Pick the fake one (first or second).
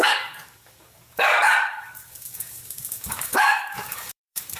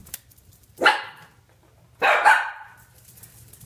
first